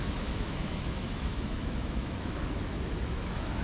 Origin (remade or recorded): remade